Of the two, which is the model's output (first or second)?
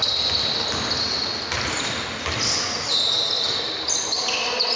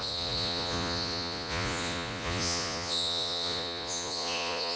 second